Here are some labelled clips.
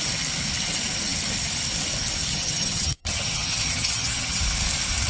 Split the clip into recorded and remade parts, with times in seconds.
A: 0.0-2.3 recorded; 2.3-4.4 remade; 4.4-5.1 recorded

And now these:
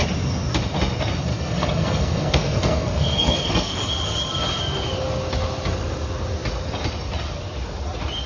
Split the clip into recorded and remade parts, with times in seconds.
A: 0.0-1.3 recorded; 1.3-3.8 remade; 3.8-8.3 recorded